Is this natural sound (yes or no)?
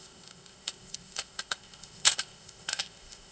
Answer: no